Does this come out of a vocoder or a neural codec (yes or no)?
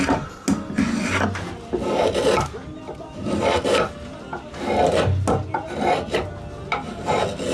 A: no